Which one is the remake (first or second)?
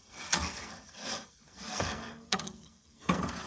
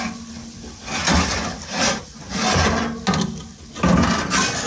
first